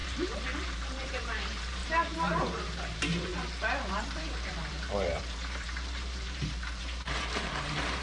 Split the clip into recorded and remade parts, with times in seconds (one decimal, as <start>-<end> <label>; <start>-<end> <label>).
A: 0.0-3.3 remade; 3.3-3.9 recorded; 3.9-8.0 remade